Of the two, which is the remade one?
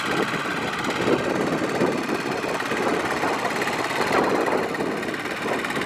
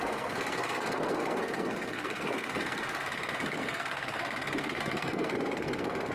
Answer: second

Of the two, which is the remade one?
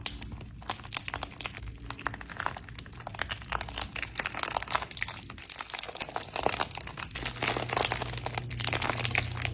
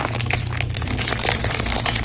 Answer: second